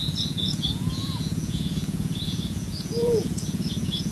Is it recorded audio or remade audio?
remade